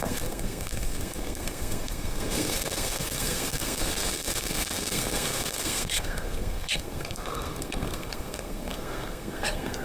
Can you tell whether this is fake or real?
fake